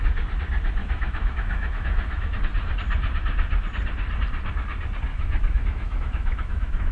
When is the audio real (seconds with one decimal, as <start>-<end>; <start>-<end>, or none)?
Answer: 0.0-0.8; 2.4-5.1